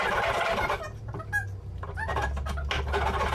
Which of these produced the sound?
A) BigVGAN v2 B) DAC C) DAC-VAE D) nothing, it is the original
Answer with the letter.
D